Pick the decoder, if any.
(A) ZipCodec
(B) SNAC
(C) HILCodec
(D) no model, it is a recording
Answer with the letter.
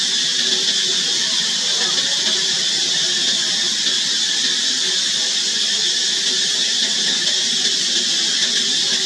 D